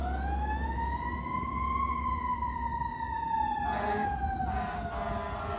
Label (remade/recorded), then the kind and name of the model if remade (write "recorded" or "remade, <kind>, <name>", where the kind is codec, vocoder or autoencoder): recorded